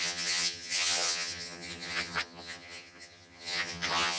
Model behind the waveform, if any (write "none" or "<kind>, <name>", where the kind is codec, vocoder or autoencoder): vocoder, HiFi-GAN